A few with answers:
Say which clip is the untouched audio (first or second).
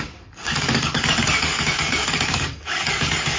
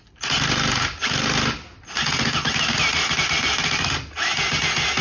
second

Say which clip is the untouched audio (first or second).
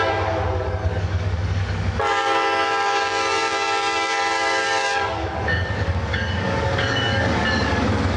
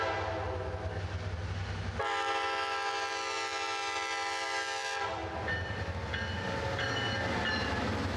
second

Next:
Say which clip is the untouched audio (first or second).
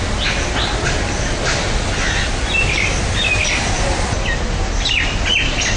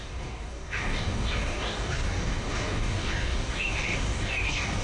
first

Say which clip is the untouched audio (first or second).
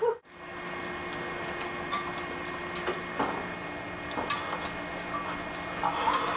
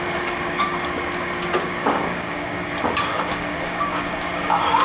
first